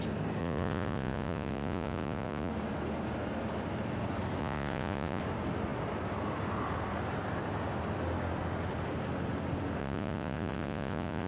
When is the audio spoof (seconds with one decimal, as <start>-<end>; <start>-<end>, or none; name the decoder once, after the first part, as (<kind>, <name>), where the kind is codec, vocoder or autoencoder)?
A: 0.4-2.5 (vocoder, Vocos); 4.4-5.2; 9.8-11.3